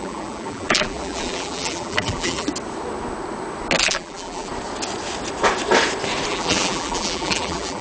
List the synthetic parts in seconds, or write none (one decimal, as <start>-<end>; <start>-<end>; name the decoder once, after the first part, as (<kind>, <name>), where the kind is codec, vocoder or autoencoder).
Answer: 0.0-2.5 (vocoder, BigVGAN v2); 3.8-4.5; 6.3-7.8